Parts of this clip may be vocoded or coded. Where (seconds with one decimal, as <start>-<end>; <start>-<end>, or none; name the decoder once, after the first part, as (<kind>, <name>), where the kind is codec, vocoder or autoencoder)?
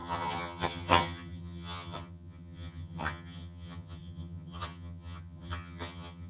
0.0-6.3 (vocoder, HiFi-GAN)